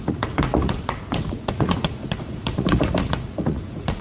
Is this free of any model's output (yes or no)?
no